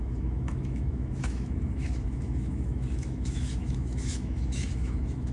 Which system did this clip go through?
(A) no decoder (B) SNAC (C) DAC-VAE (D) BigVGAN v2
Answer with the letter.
C